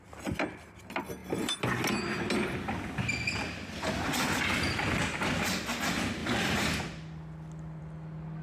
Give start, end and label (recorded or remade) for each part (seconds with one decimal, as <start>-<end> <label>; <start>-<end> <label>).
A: 0.0-8.4 recorded